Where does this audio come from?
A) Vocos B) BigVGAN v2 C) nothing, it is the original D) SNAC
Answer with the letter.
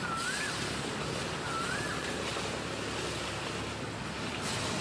C